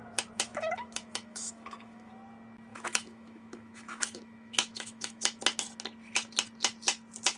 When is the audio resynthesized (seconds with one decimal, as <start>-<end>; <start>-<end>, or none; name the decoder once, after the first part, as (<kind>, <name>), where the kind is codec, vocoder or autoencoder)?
0.5-2.1 (autoencoder, DAC-VAE); 2.7-5.4